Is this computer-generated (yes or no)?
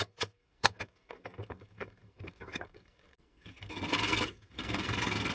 yes